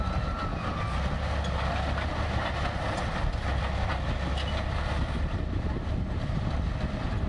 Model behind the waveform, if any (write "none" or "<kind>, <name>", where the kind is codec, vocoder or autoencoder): none